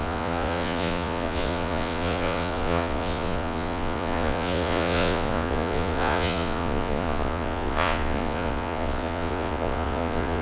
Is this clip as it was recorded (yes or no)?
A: no